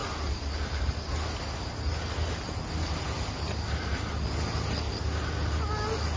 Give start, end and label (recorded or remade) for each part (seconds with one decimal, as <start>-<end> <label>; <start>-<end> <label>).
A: 0.0-6.2 recorded